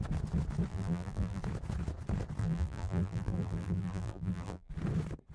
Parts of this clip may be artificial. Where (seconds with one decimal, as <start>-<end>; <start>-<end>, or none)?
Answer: 0.7-1.4; 2.4-4.7